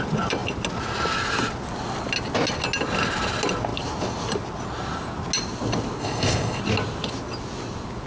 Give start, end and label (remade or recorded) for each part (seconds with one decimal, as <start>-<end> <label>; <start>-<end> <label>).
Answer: 0.0-6.0 recorded; 6.0-6.6 remade; 6.6-8.1 recorded